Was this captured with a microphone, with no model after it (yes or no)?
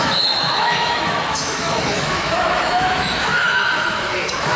no